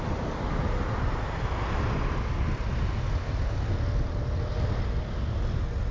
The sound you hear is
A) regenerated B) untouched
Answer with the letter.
B